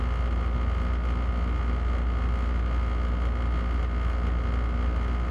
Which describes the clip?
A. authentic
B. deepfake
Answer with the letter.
A